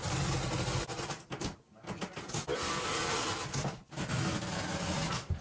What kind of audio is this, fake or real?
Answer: real